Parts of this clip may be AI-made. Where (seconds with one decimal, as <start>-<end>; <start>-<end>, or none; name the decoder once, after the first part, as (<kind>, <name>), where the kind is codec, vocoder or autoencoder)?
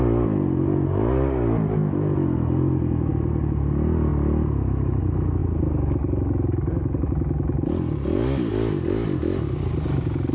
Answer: none